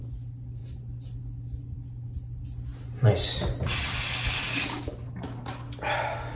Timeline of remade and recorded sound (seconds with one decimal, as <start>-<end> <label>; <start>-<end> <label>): 0.0-6.3 recorded